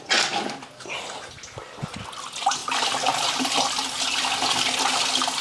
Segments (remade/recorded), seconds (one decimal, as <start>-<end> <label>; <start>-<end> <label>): 0.0-2.6 recorded; 2.6-3.7 remade; 3.7-5.4 recorded